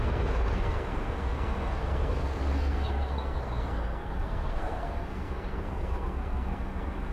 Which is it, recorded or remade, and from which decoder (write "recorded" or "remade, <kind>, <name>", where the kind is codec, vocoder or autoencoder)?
remade, codec, SNAC